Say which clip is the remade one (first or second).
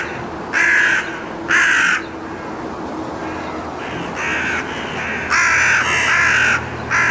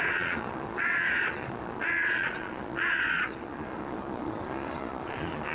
second